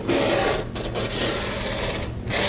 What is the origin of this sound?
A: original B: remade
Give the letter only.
A